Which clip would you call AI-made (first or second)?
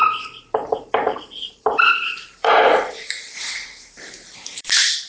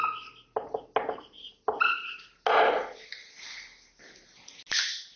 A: first